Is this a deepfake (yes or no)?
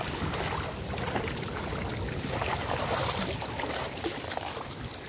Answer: no